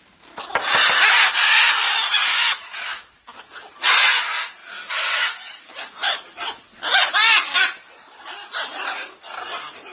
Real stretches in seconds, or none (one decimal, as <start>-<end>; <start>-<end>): 0.0-2.3; 3.4-9.9